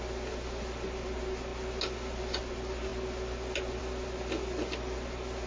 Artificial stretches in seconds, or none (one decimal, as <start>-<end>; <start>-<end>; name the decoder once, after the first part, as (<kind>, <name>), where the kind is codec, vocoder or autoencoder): none